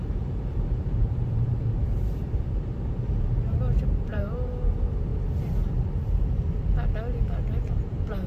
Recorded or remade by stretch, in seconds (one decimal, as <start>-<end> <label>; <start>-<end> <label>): 0.0-5.1 remade; 5.1-7.2 recorded; 7.2-8.3 remade